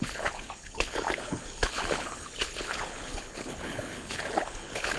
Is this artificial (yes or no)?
yes